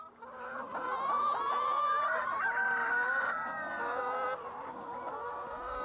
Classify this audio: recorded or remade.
recorded